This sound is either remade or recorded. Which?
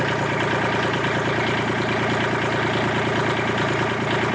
recorded